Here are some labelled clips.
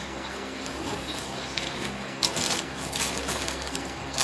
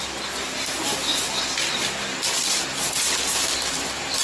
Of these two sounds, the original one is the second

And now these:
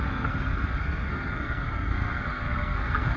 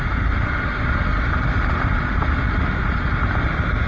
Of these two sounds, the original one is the second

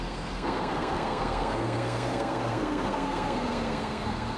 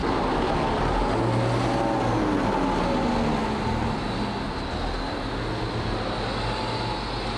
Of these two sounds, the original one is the second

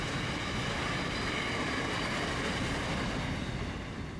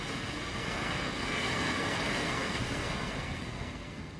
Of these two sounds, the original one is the first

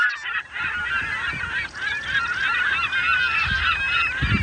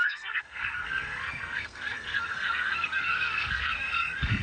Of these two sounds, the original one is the first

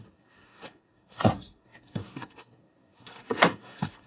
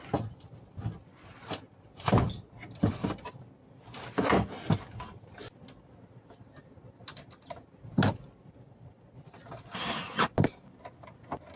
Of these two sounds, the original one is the second